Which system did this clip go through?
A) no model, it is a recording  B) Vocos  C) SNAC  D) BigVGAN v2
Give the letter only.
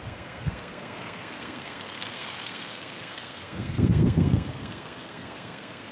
C